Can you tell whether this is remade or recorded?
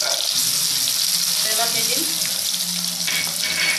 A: recorded